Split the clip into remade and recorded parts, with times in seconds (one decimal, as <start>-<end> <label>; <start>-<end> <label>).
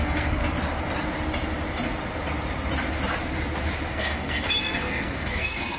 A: 0.0-0.4 remade; 0.4-3.9 recorded; 3.9-5.8 remade